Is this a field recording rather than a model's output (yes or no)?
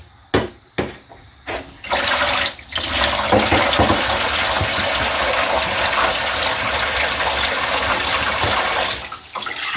yes